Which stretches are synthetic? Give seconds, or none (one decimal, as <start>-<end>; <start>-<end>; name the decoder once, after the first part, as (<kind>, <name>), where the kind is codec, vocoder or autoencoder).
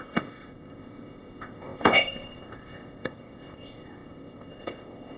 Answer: 0.0-5.2 (codec, ZipCodec)